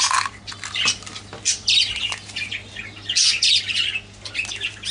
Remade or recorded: recorded